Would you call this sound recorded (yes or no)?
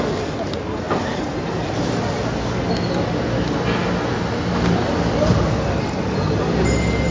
yes